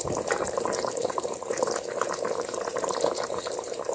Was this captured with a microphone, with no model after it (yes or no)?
no